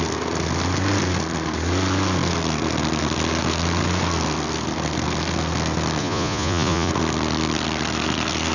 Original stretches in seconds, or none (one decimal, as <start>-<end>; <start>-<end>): 0.0-6.0; 6.9-8.5